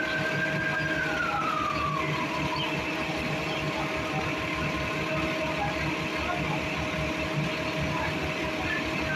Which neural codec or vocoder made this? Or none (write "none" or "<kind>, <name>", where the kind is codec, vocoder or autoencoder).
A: none